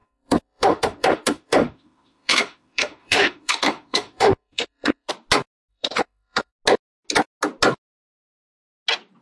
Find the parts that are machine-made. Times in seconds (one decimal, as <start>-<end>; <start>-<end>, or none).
0.0-5.1; 5.7-6.5